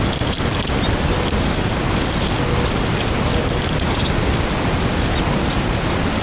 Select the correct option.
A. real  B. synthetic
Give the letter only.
A